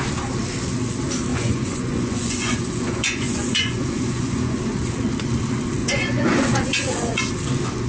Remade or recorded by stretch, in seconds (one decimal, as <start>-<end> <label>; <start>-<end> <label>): 0.0-1.3 recorded; 1.3-4.6 remade; 4.6-5.8 recorded; 5.8-7.3 remade; 7.3-7.9 recorded